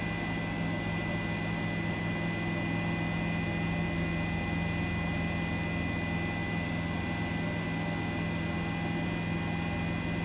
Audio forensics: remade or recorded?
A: recorded